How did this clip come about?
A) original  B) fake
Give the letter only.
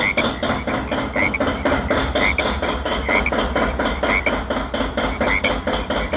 A